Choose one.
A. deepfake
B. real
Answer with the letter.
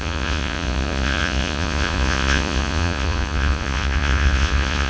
A